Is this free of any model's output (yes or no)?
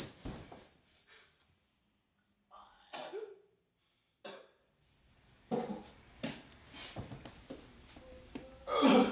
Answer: yes